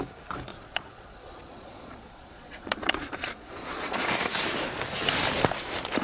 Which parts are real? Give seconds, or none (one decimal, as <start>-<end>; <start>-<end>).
0.0-0.5; 4.1-6.0